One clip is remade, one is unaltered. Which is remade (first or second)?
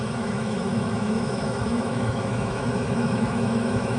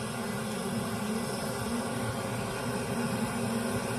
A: first